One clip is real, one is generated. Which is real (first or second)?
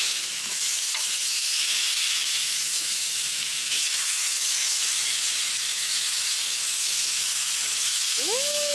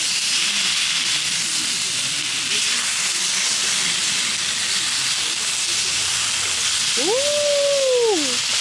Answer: second